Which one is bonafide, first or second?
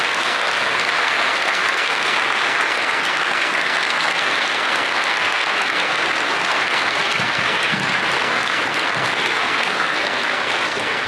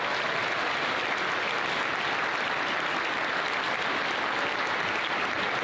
second